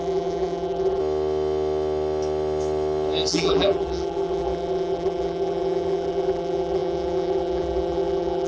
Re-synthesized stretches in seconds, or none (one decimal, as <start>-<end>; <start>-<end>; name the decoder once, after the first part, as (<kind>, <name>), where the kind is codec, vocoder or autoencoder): 0.0-1.0 (vocoder, BigVGAN v2); 3.3-8.5